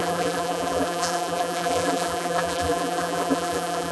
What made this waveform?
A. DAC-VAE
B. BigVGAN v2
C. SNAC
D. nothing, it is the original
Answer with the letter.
B